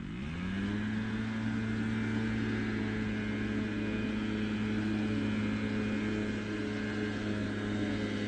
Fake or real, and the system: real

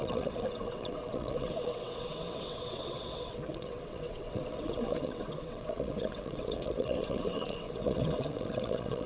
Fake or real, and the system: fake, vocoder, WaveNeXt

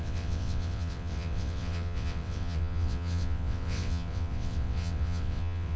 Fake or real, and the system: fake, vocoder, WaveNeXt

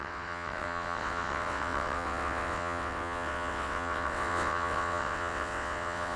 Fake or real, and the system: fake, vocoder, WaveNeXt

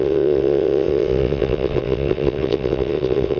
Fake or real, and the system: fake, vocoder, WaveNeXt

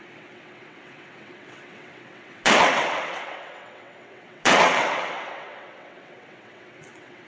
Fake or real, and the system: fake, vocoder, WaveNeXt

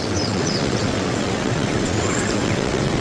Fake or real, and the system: fake, vocoder, WaveNeXt